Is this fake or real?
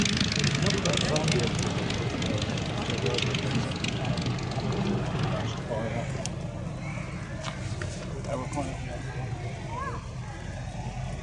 real